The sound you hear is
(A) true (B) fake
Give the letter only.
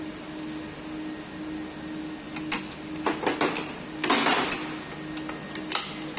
A